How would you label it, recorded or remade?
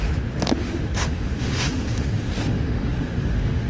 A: remade